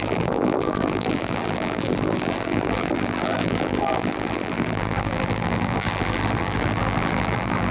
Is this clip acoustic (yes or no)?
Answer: no